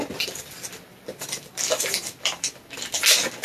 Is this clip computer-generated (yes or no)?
no